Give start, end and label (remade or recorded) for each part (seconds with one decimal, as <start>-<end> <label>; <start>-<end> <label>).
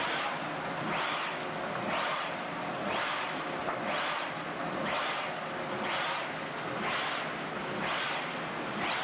0.0-3.6 remade; 3.6-7.6 recorded; 7.6-9.0 remade